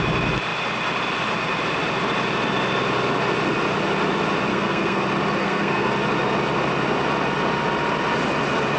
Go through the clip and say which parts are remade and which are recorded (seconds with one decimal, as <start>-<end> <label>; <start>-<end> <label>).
0.0-4.5 recorded; 4.5-5.0 remade; 5.0-5.4 recorded; 5.4-5.9 remade; 5.9-8.8 recorded